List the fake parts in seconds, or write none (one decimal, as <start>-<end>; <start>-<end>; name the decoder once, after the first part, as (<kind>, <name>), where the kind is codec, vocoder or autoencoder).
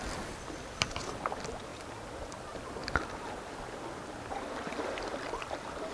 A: none